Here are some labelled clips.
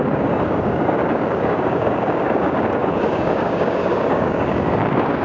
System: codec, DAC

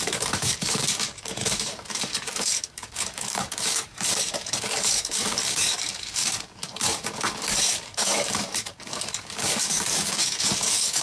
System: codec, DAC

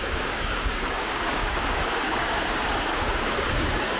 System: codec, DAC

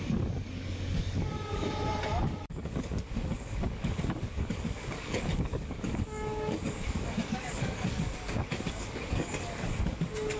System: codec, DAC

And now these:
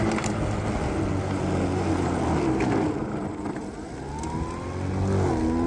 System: none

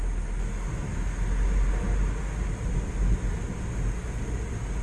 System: none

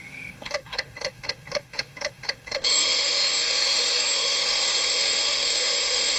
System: autoencoder, DAC-VAE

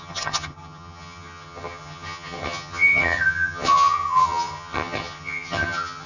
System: vocoder, HiFi-GAN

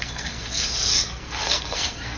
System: codec, SNAC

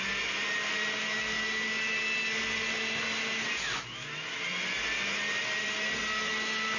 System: none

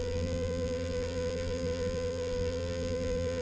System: vocoder, BigVGAN v2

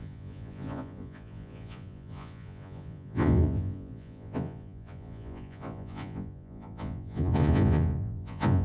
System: vocoder, Vocos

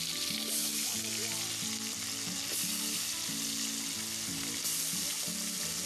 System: none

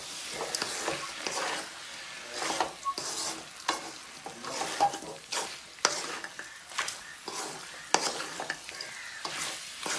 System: none